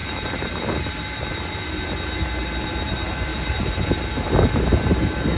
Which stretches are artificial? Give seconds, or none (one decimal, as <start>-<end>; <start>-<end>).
0.0-1.7; 3.3-3.9